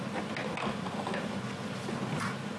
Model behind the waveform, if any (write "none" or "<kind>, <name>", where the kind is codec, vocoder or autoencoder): none